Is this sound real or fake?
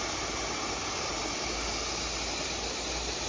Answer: real